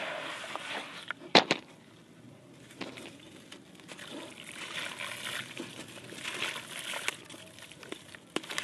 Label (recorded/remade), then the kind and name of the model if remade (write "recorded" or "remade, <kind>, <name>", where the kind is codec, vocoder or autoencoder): recorded